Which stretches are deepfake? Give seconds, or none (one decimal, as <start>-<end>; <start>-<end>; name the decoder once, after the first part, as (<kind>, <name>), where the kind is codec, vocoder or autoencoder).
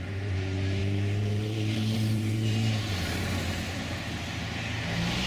0.8-3.8 (vocoder, BigVGAN v2)